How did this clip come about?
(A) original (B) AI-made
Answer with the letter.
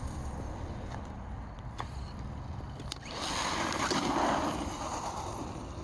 A